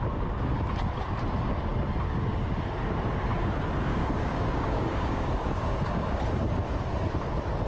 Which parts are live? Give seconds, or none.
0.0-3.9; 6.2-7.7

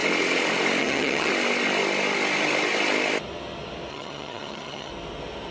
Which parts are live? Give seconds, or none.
0.0-0.8; 1.3-3.9; 4.9-5.5

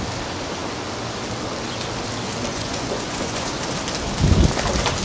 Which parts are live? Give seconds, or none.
0.0-2.5; 3.5-5.0

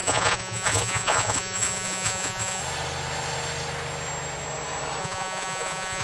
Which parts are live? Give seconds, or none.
2.6-5.0

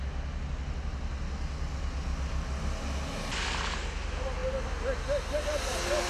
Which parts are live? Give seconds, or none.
0.0-6.1

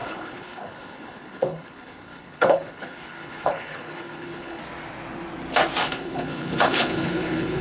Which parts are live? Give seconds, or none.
4.6-5.8